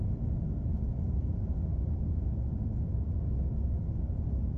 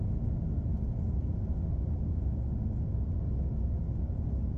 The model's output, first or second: first